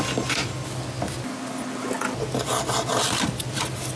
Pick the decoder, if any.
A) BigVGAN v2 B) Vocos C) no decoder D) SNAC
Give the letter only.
C